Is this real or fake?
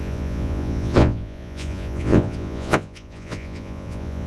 fake